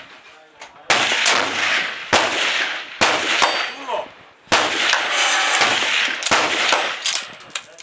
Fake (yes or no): no